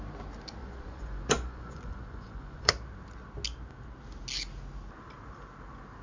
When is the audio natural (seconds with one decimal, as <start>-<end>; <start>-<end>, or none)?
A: 0.0-0.6; 2.7-6.0